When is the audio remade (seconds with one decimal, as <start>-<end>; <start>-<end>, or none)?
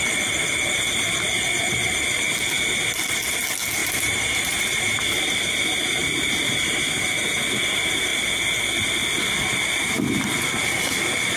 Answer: 3.8-6.9